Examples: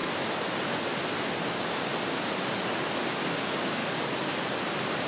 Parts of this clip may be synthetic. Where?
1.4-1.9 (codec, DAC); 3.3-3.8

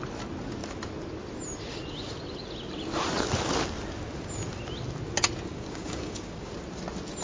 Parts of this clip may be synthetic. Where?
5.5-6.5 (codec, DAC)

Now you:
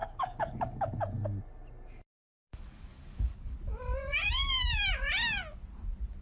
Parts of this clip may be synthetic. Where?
0.0-1.0 (codec, DAC); 2.5-3.5